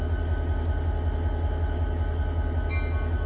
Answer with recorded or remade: recorded